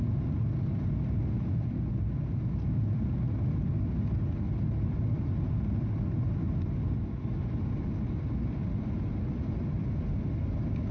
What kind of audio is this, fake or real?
real